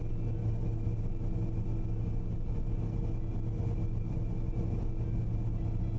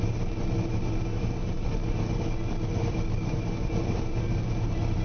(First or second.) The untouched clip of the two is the first